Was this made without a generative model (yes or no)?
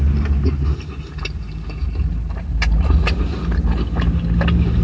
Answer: yes